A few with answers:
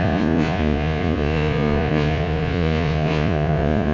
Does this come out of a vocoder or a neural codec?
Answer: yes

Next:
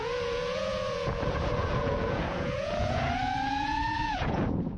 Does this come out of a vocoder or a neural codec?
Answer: yes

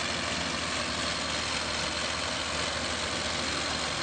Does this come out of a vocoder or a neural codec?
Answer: no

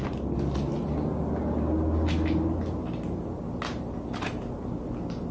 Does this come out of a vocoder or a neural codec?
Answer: no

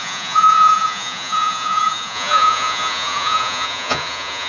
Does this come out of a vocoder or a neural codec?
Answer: yes